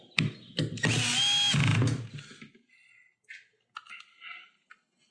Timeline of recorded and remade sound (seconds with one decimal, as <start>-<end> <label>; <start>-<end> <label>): 0.0-5.1 recorded